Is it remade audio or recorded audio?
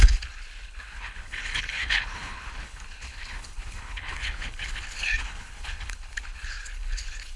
remade